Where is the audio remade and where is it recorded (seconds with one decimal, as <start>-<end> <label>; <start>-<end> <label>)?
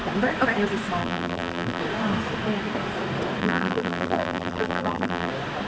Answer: 0.0-1.0 recorded; 1.0-1.8 remade; 1.8-3.4 recorded; 3.4-5.3 remade; 5.3-5.7 recorded